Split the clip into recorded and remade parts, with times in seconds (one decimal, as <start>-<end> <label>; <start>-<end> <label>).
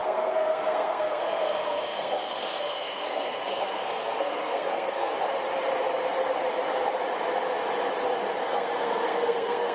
0.0-5.1 remade; 5.1-8.4 recorded; 8.4-9.7 remade